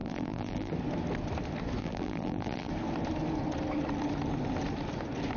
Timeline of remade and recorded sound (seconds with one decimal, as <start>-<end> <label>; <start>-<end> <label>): 0.0-0.7 remade; 0.7-1.8 recorded; 1.8-2.7 remade; 2.7-5.4 recorded